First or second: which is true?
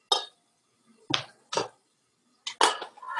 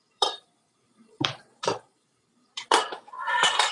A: first